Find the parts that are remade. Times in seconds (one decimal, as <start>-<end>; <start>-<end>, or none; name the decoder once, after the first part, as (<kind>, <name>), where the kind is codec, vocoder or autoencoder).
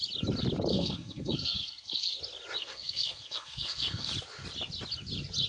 0.7-2.2 (codec, SNAC); 2.6-4.1